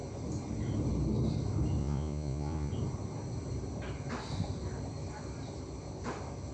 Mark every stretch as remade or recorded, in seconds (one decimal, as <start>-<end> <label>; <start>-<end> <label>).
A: 0.0-1.8 recorded; 1.8-2.7 remade; 2.7-6.5 recorded